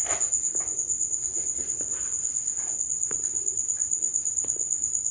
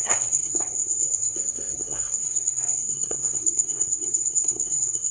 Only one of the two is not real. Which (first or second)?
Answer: second